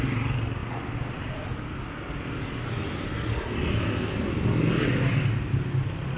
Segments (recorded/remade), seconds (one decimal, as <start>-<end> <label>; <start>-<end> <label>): 0.0-6.2 recorded